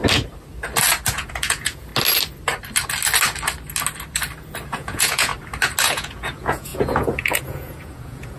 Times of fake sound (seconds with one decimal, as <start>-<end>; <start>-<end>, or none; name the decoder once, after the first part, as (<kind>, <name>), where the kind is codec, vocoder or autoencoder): 1.1-1.9 (vocoder, Vocos); 4.7-5.3; 5.8-8.4